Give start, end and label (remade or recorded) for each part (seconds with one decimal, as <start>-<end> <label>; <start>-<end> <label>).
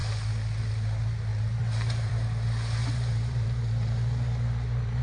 0.0-1.3 recorded; 1.3-2.1 remade; 2.1-2.8 recorded; 2.8-5.0 remade